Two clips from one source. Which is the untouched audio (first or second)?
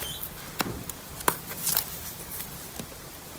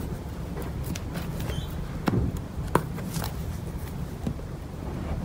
first